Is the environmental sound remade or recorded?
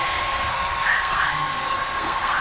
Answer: remade